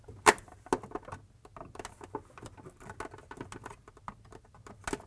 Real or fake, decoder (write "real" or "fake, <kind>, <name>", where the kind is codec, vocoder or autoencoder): real